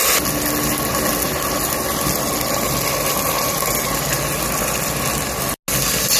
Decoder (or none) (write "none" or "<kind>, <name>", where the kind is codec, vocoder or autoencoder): none